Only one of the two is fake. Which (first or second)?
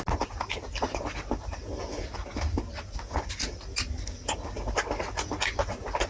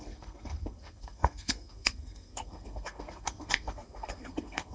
second